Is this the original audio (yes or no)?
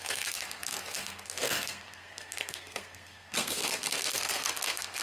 no